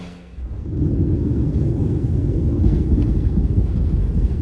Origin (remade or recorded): remade